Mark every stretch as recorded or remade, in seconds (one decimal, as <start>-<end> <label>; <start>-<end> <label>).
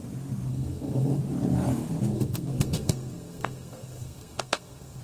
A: 0.0-0.5 recorded; 0.5-1.2 remade; 1.2-2.1 recorded; 2.1-5.0 remade